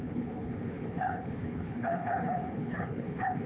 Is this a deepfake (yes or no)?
yes